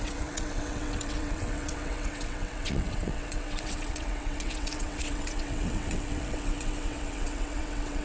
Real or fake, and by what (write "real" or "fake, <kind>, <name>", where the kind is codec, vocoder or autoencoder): fake, vocoder, WaveNeXt